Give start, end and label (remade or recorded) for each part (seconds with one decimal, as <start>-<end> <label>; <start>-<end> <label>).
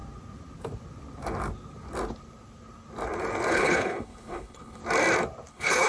0.0-3.5 recorded; 3.5-4.8 remade; 4.8-5.5 recorded; 5.5-5.9 remade